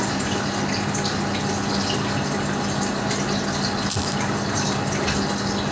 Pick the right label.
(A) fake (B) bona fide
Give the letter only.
B